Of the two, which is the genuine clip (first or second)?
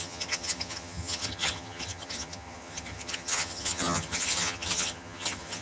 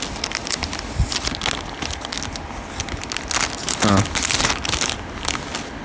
second